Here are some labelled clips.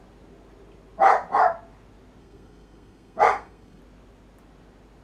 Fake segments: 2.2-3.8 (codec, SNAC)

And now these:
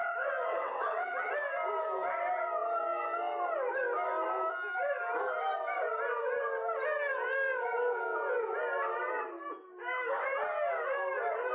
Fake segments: 0.0-1.3 (vocoder, WaveNeXt)